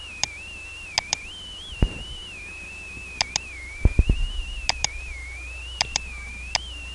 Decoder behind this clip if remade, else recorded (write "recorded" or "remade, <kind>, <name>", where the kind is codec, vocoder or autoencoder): recorded